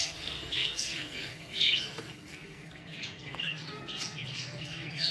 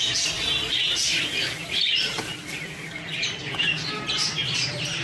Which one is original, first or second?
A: second